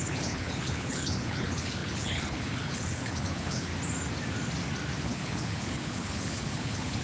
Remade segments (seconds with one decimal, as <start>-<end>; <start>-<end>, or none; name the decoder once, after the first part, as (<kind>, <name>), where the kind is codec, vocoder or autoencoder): 0.0-3.7 (codec, HILCodec); 5.0-7.0